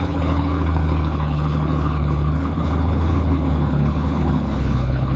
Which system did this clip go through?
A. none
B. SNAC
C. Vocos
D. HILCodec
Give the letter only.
D